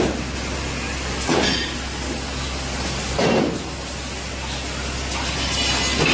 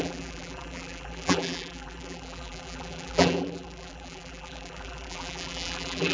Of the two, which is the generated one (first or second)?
second